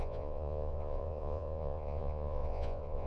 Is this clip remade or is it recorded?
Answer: remade